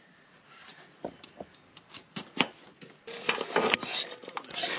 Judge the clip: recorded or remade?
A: recorded